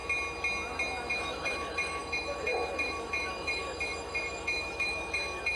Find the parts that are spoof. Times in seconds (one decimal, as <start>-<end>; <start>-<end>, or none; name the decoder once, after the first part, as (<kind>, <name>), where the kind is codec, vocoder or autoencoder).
1.1-5.6 (autoencoder, DAC-VAE)